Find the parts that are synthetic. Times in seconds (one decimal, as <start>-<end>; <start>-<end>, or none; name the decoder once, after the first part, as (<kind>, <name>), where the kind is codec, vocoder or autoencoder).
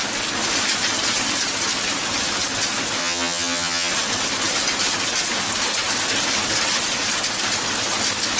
3.0-3.9 (vocoder, HiFi-GAN)